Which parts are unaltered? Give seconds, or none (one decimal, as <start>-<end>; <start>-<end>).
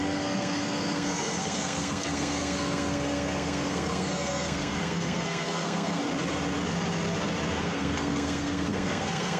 6.0-7.6